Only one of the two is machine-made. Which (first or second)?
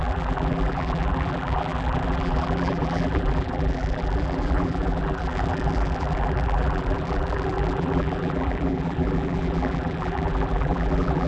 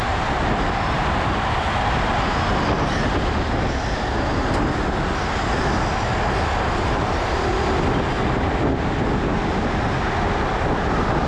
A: first